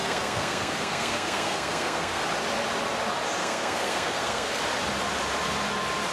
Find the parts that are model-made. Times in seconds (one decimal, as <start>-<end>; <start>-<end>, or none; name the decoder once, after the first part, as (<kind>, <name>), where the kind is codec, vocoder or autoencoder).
0.0-2.2 (codec, SNAC); 3.4-4.6